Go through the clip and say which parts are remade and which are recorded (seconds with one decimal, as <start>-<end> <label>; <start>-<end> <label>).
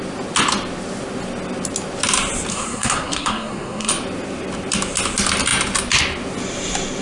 0.0-2.5 recorded; 2.5-3.9 remade; 3.9-7.0 recorded